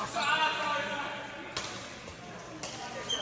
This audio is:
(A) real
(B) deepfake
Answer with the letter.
A